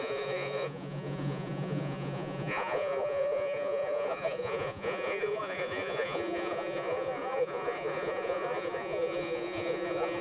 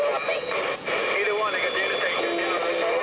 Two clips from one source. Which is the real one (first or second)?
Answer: second